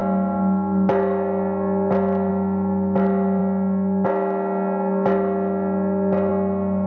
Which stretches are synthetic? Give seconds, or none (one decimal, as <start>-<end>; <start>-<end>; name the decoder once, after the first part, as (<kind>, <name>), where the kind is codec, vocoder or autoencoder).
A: none